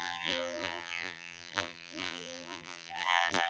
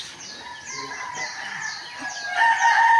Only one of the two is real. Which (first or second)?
second